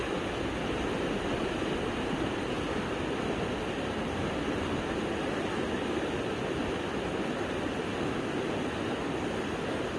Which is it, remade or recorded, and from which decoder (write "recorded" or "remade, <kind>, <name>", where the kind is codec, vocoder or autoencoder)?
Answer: recorded